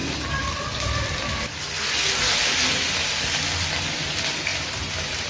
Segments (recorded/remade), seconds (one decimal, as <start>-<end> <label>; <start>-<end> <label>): 0.0-1.1 remade; 1.1-4.5 recorded; 4.5-5.3 remade

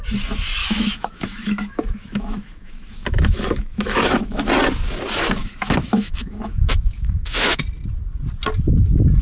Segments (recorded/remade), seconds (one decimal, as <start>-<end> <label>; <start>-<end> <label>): 0.0-0.6 recorded; 0.6-4.5 remade; 4.5-5.4 recorded; 5.4-7.6 remade; 7.6-9.2 recorded

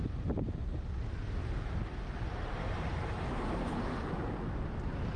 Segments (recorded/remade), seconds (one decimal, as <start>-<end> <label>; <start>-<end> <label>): 0.0-1.4 recorded; 1.4-4.5 remade; 4.5-5.2 recorded

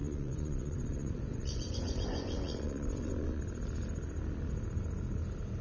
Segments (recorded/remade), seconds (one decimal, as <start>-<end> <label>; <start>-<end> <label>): 0.0-3.4 remade; 3.4-5.6 recorded

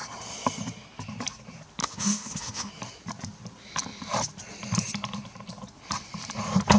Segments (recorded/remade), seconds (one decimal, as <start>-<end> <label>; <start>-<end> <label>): 0.0-1.8 recorded; 1.8-2.7 remade; 2.7-6.8 recorded

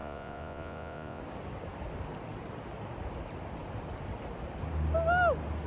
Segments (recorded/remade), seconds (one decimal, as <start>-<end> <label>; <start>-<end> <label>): 0.0-1.2 remade; 1.2-5.7 recorded

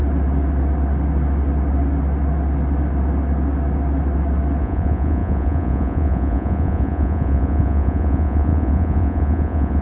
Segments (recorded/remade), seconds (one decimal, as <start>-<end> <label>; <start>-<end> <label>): 0.0-4.6 recorded; 4.6-9.8 remade

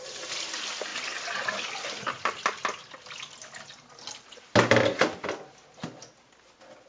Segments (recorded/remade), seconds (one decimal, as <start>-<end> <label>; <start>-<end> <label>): 0.0-6.9 recorded